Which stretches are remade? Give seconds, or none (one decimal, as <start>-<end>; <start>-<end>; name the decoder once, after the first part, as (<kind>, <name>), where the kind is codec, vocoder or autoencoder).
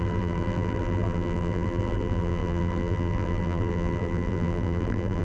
0.0-5.2 (vocoder, BigVGAN v2)